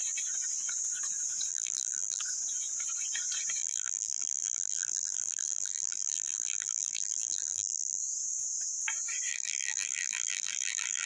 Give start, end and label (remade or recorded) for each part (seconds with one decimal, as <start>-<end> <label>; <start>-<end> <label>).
0.0-1.5 recorded; 1.5-2.2 remade; 2.2-3.6 recorded; 3.6-8.0 remade; 8.0-9.3 recorded; 9.3-11.1 remade